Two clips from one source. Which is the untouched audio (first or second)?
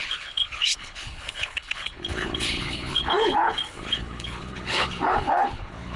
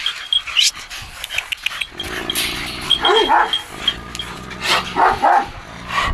second